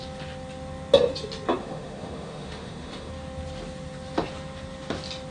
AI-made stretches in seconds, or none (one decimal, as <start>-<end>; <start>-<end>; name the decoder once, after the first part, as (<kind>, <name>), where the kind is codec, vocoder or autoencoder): 1.6-3.1 (autoencoder, DAC-VAE)